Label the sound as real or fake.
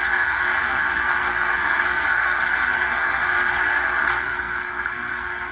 fake